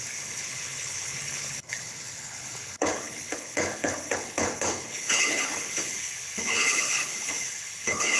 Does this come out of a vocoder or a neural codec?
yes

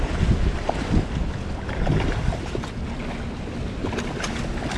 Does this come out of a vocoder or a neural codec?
no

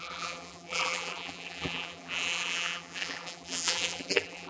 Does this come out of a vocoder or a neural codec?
yes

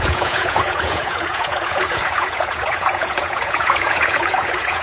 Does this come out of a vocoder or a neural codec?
yes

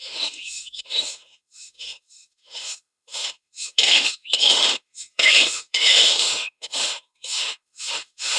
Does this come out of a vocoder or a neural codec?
yes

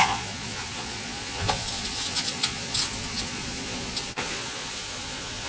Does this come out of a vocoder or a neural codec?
yes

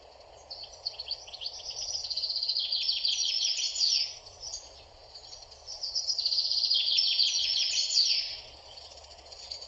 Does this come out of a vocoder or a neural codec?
yes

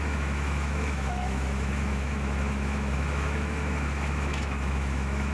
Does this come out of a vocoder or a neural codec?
yes